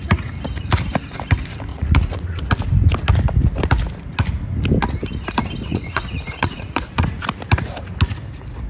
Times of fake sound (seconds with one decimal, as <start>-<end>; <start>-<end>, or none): 1.7-2.5; 5.7-7.2